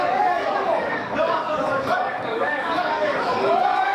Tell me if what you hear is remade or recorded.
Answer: remade